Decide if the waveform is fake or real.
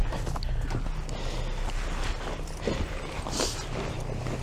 real